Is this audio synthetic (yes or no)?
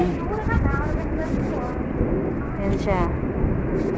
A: no